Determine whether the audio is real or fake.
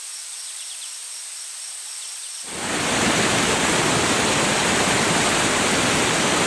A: real